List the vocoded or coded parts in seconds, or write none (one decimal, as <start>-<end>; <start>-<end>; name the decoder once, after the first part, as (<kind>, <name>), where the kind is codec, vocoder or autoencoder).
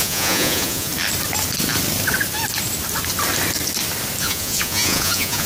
0.0-0.9 (vocoder, Vocos); 4.2-5.5